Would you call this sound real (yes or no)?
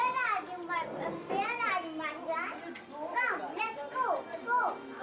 yes